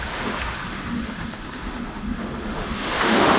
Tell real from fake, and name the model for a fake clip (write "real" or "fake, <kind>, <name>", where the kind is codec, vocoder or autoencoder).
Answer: fake, autoencoder, DAC-VAE